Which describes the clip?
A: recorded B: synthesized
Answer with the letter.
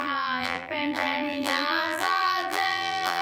B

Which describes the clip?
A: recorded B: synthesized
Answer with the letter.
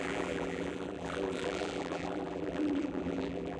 B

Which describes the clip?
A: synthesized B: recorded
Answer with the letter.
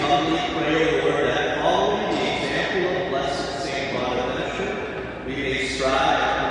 B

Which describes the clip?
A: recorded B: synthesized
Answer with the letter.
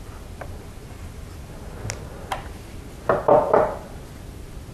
A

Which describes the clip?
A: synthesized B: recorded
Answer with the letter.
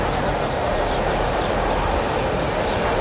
A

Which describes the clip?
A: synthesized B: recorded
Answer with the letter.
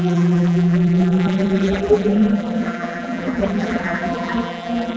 A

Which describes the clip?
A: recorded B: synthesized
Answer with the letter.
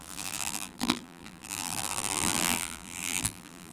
B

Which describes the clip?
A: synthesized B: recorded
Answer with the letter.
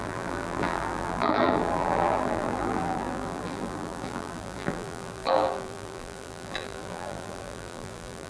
A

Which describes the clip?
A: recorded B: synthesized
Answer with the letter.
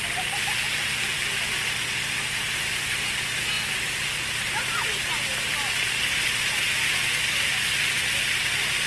A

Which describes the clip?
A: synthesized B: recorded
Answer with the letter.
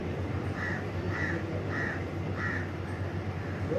A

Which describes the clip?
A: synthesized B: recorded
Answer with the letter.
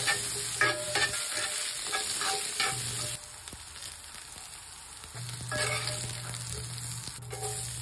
B